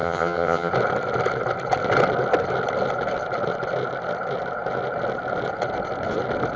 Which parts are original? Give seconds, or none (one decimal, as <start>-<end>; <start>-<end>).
0.7-6.6